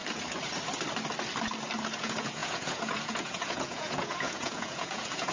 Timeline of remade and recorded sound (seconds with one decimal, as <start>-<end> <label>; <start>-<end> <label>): 0.0-2.0 recorded; 2.0-5.3 remade